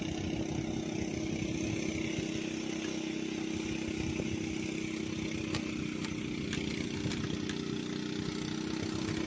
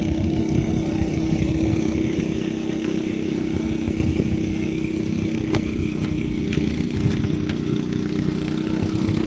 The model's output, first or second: second